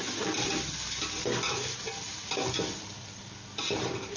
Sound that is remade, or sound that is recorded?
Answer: recorded